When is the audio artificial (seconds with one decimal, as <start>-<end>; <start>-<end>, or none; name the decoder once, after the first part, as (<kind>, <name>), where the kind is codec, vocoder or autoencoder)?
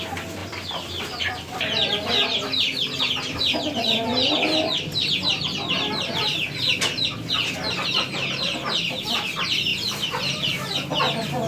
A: 0.4-3.0 (vocoder, BigVGAN v2); 9.7-10.5